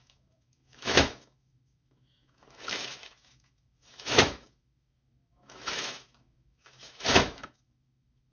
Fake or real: fake